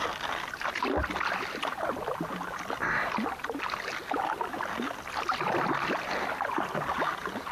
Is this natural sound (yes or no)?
yes